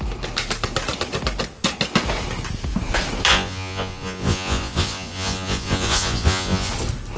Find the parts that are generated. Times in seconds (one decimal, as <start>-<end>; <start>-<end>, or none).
3.3-6.7